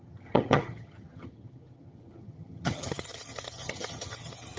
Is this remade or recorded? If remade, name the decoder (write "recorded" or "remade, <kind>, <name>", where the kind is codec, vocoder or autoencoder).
remade, vocoder, HiFi-GAN